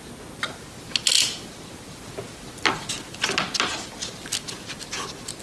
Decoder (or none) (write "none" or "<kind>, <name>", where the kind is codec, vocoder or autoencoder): none